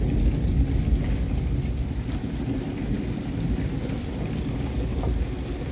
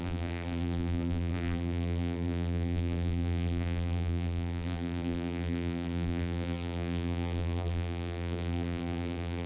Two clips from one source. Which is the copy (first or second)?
second